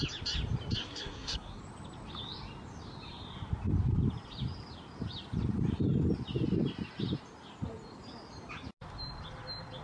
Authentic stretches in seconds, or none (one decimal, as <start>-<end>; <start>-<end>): 0.0-0.8; 1.6-9.8

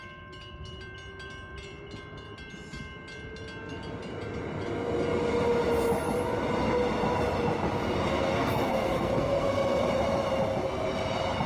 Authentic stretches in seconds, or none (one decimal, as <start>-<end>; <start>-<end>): 0.0-8.1; 9.8-11.5

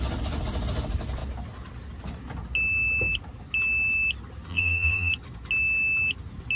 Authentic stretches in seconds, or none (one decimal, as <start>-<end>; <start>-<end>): 0.0-4.5; 5.1-6.6

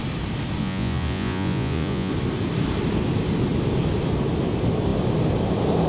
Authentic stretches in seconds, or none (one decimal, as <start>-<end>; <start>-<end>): 0.0-0.6; 2.1-5.9

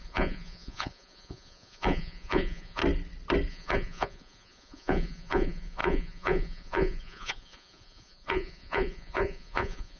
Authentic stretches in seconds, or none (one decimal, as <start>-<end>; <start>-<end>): 2.8-3.5